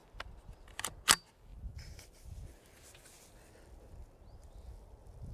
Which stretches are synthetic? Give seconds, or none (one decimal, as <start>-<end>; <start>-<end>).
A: 0.0-0.9